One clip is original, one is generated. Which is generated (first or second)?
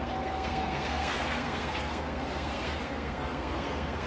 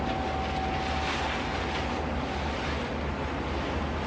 first